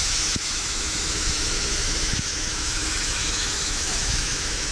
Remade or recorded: remade